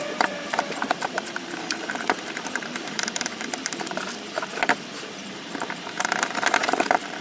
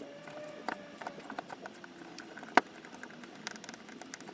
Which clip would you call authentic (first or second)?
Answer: second